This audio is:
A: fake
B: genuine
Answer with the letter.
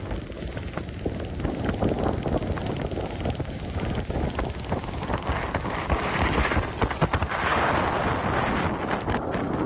B